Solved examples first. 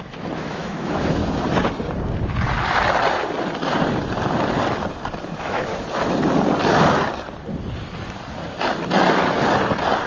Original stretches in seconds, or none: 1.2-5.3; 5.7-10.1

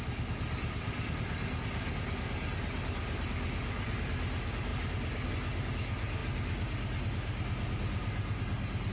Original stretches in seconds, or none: 0.0-8.9

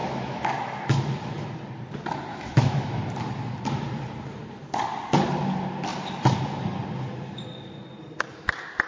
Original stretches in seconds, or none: 1.5-2.3; 3.0-8.9